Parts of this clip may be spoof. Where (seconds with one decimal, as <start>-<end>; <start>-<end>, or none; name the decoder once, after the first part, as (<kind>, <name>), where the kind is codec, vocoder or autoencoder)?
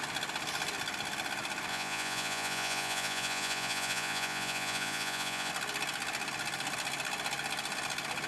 1.7-5.5 (vocoder, Vocos)